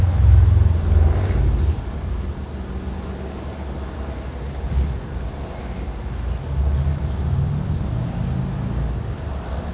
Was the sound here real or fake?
real